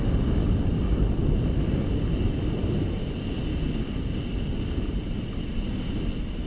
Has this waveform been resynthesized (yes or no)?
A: no